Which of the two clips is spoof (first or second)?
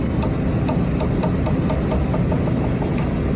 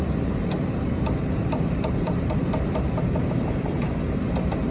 second